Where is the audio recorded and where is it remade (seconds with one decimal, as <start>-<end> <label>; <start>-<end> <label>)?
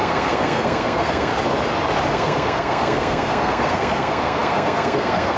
0.0-1.3 remade; 1.3-2.1 recorded; 2.1-5.4 remade